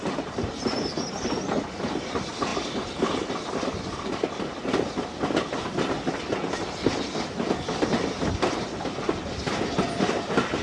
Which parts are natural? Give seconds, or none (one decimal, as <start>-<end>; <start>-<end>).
0.0-10.6